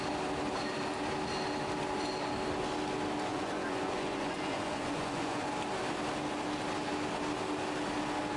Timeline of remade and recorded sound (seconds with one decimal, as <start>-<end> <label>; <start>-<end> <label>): 0.0-3.3 recorded; 3.3-5.4 remade; 5.4-8.4 recorded